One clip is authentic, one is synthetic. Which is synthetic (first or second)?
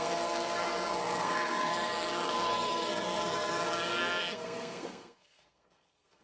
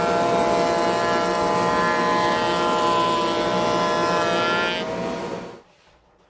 first